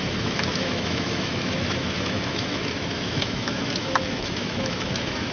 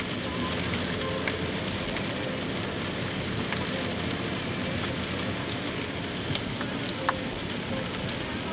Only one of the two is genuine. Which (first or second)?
second